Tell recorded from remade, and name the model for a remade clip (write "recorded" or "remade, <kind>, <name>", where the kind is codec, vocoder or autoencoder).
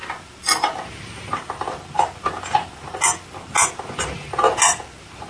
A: recorded